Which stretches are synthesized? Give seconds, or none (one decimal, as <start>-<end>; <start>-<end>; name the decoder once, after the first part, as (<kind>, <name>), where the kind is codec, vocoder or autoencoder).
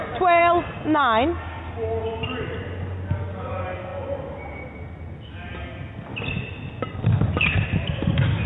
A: none